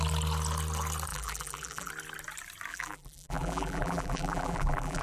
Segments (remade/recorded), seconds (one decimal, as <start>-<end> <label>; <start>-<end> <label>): 0.0-1.1 recorded; 1.1-1.9 remade; 1.9-2.7 recorded; 2.7-5.0 remade